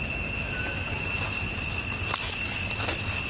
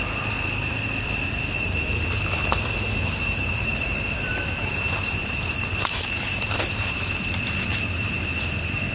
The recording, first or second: first